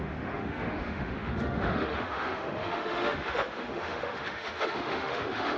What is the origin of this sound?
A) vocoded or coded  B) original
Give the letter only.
A